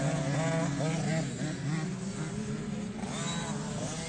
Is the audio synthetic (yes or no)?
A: no